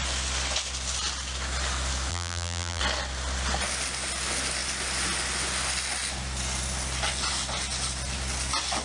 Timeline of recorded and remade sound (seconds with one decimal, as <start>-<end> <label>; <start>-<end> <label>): 0.0-2.1 recorded; 2.1-2.8 remade; 2.8-8.8 recorded

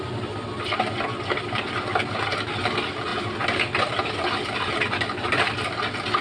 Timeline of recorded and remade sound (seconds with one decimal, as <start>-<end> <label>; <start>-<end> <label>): 0.0-6.2 recorded

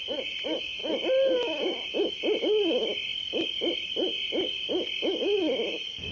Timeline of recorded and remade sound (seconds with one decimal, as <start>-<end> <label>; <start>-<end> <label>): 0.0-0.8 recorded; 0.8-2.1 remade; 2.1-6.1 recorded

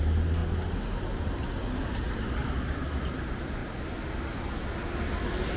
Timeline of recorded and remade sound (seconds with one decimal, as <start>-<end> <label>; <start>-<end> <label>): 0.0-0.4 remade; 0.4-1.8 recorded; 1.8-3.6 remade; 3.6-5.6 recorded

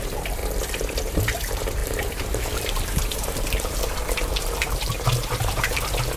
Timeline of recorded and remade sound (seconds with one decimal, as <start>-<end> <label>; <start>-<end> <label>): 0.0-0.4 remade; 0.4-1.0 recorded; 1.0-6.2 remade

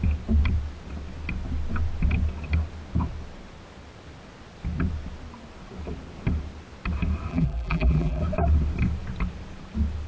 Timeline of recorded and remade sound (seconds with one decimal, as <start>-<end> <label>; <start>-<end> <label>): 0.0-7.3 recorded; 7.3-8.2 remade; 8.2-10.1 recorded

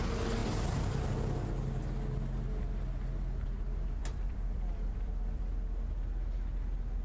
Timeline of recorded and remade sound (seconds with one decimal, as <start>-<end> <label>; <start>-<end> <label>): 0.0-4.0 recorded; 4.0-5.5 remade; 5.5-7.0 recorded